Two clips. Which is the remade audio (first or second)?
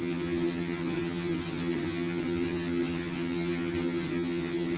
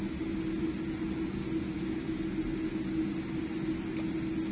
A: first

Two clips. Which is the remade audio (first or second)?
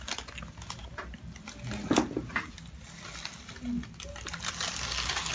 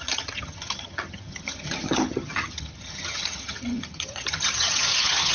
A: second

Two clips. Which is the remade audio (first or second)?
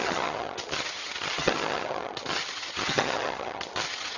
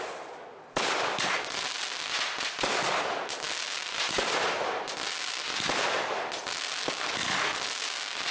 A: first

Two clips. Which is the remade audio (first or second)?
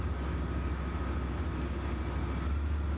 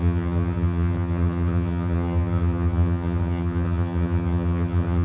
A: second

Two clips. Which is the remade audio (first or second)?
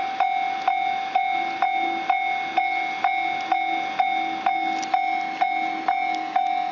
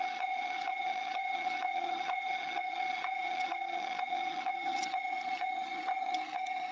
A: second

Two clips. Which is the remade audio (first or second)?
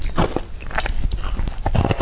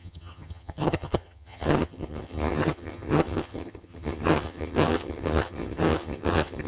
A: second